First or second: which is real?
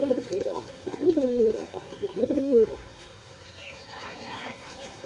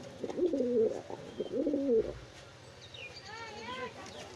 second